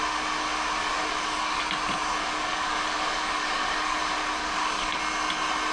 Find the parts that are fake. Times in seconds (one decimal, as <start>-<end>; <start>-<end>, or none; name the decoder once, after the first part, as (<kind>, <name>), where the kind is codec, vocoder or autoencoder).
0.8-1.6 (codec, DAC); 2.2-4.0; 4.4-5.0